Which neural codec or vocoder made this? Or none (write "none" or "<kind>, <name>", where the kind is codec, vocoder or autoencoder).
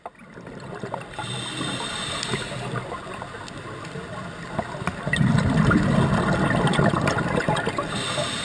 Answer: none